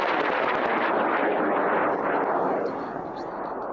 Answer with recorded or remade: recorded